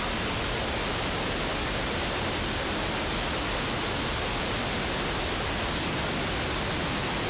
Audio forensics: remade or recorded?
recorded